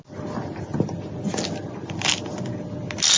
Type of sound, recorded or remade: recorded